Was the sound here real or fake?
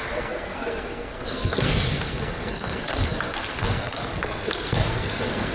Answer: fake